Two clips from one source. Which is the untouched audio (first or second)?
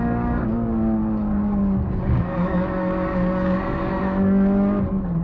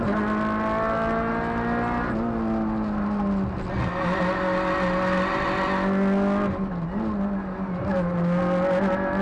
second